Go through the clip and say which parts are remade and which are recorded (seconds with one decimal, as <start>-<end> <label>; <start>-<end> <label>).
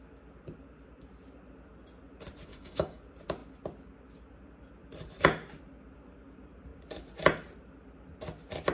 0.0-2.5 recorded; 2.5-3.0 remade; 3.0-8.7 recorded